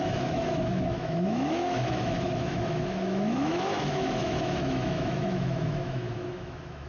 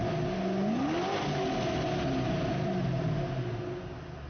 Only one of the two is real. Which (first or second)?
second